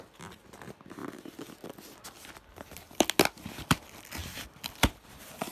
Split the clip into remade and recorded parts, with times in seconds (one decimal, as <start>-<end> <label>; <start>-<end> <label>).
0.0-5.5 recorded